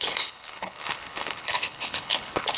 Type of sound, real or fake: fake